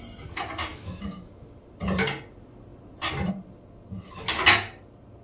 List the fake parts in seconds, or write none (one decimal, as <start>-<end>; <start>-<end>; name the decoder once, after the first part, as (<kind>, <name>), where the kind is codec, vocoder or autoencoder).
0.7-1.3 (autoencoder, DAC-VAE)

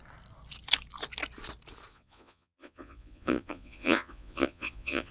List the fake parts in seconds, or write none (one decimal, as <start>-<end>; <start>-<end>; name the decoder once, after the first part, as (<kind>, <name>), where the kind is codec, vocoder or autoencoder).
1.9-5.1 (vocoder, Vocos)